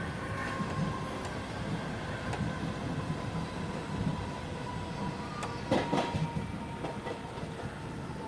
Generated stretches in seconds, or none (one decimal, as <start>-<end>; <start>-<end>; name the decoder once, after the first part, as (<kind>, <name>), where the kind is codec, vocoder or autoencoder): none